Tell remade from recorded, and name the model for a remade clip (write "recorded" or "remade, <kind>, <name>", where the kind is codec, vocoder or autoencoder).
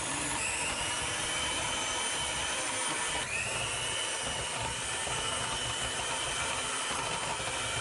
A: remade, vocoder, BigVGAN v2